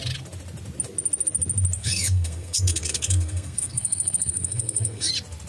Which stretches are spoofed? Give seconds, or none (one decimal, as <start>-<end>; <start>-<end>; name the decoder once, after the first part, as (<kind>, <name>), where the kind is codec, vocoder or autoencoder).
1.8-5.1 (codec, SNAC)